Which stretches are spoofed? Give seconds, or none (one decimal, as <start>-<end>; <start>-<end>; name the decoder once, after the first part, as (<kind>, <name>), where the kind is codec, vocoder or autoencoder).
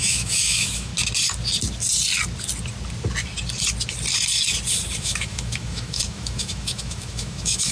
0.0-0.9 (autoencoder, DAC-VAE); 5.0-7.7